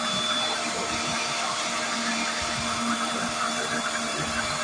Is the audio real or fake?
fake